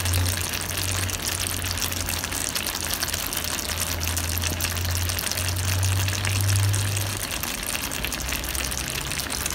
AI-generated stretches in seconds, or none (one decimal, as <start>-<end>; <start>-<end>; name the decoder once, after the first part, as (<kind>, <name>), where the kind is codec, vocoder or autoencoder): none